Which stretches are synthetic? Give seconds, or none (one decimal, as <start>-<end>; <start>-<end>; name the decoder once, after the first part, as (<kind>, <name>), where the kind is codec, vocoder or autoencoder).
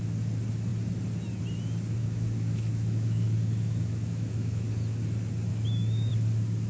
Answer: 2.0-4.7 (autoencoder, DAC-VAE); 5.5-6.1